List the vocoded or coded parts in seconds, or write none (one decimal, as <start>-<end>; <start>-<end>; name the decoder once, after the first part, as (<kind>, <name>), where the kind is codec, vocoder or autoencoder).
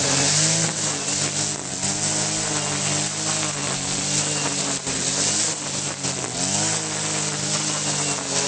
none